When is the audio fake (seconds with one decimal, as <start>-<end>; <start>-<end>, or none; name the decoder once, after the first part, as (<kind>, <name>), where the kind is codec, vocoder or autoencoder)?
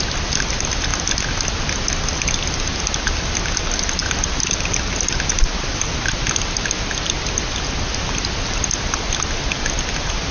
none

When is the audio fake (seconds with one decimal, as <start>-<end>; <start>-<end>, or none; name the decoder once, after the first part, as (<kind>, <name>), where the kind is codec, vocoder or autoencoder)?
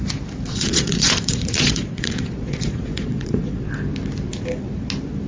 0.5-3.7 (vocoder, Vocos)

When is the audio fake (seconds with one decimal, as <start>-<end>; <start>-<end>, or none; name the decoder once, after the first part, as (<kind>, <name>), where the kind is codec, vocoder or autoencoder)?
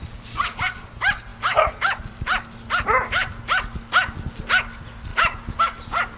none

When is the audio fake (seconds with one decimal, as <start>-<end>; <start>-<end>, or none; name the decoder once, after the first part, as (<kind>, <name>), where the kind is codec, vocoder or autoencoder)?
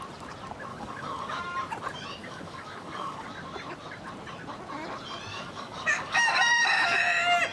0.7-1.4 (codec, DAC); 2.2-3.3; 5.3-7.0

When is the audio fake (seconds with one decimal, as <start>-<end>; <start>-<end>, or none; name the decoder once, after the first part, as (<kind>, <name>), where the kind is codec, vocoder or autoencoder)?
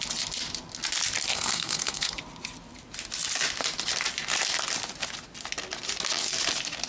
1.3-2.2 (codec, SNAC)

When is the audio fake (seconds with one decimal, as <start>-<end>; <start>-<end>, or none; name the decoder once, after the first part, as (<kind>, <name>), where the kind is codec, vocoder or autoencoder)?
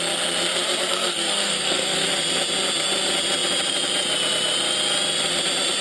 0.9-2.1 (codec, SNAC)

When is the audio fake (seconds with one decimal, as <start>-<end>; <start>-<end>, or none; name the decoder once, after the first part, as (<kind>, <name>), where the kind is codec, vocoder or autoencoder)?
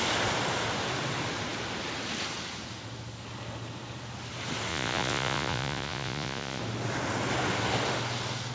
4.7-6.6 (vocoder, Vocos)